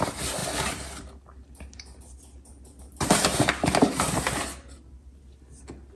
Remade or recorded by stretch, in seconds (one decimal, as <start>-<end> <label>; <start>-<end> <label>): 0.0-6.0 recorded